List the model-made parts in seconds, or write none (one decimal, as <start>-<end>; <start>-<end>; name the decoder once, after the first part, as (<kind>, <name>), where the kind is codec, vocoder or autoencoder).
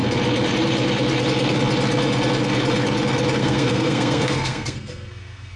3.4-5.6 (codec, SNAC)